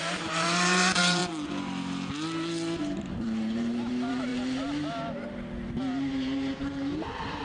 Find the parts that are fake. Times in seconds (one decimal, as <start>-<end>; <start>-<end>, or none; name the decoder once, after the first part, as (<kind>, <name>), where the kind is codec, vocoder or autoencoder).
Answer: 0.0-1.2 (vocoder, BigVGAN v2); 2.8-4.3; 6.6-7.4